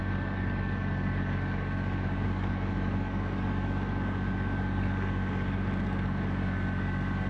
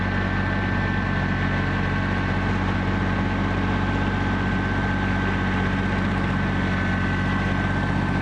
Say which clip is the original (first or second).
second